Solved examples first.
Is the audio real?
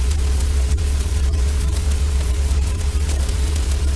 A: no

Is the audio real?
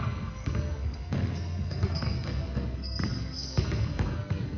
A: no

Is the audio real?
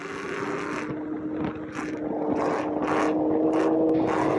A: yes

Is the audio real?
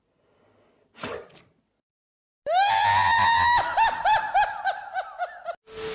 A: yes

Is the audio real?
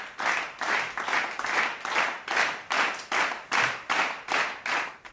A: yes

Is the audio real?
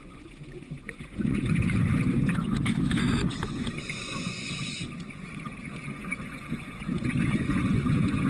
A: no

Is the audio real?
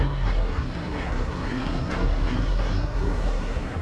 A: no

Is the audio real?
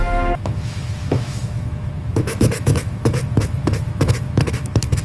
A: no